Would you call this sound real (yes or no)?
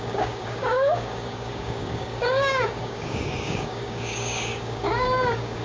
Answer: no